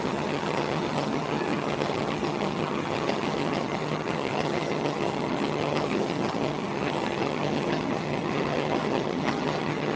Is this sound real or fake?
fake